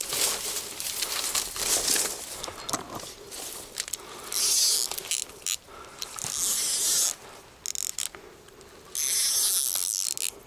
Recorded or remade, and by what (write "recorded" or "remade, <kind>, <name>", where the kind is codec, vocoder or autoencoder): recorded